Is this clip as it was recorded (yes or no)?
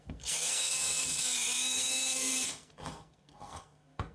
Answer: no